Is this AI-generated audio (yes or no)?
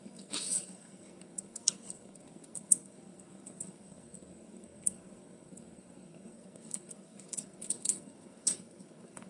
yes